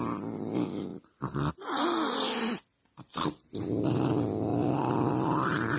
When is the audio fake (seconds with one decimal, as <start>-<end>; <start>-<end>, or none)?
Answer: 0.9-1.5; 4.5-5.8